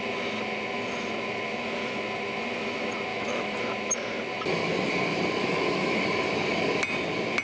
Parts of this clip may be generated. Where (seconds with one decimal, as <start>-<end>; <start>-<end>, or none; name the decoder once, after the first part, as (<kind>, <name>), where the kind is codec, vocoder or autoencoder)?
3.1-3.6 (autoencoder, DAC-VAE); 5.4-6.0